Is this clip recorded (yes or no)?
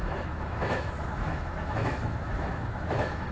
no